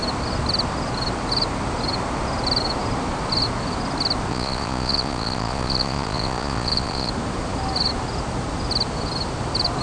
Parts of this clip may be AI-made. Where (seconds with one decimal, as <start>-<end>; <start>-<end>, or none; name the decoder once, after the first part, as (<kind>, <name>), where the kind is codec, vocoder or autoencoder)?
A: 4.3-7.1 (vocoder, Vocos)